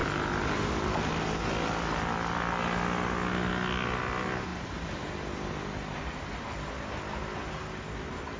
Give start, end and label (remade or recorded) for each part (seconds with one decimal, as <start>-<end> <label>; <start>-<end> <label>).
0.0-8.4 recorded